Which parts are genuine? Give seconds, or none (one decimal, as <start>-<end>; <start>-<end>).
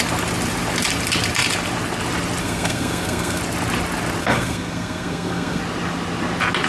0.0-2.4; 3.4-4.2; 5.6-6.7